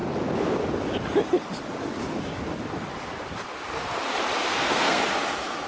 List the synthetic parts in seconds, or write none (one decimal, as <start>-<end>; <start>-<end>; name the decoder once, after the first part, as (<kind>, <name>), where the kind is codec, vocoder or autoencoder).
4.5-5.0 (codec, SNAC)